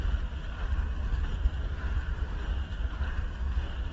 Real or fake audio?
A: real